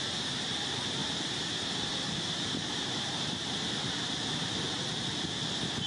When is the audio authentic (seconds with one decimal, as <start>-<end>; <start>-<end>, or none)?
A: 0.0-1.0; 4.5-5.9